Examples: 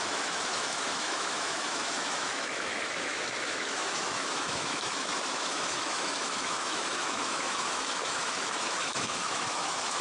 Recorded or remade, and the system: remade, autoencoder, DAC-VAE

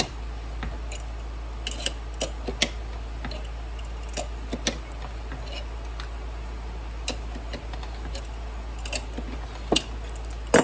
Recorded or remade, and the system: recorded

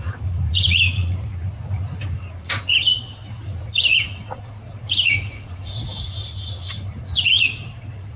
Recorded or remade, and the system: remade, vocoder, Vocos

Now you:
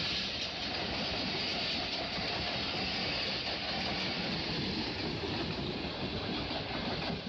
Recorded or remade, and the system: recorded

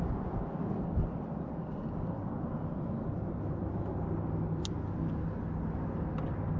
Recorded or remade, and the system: recorded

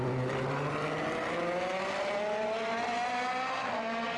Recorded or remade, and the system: recorded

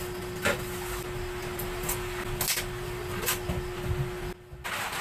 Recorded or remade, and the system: recorded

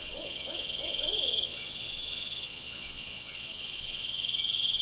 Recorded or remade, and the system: remade, vocoder, Vocos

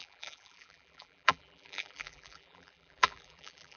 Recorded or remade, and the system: remade, vocoder, BigVGAN v2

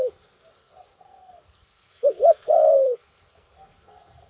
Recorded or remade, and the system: remade, codec, SNAC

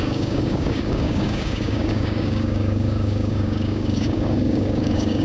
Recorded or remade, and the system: remade, codec, DAC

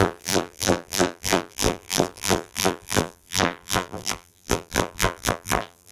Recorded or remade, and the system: remade, vocoder, BigVGAN v2